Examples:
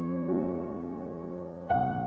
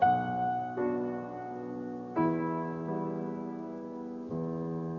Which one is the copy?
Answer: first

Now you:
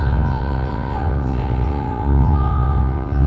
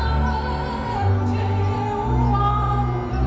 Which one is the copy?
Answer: first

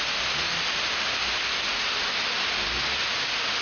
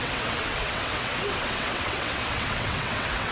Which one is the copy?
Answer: second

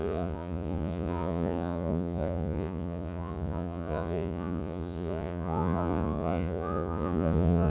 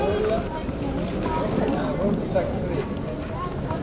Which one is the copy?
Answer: first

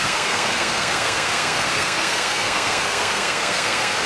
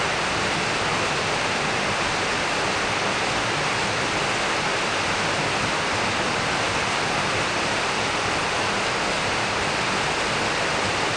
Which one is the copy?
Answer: first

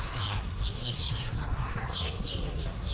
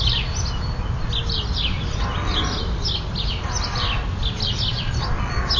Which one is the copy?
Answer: first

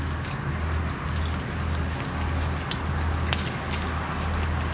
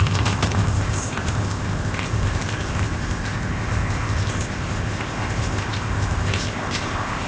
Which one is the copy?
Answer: second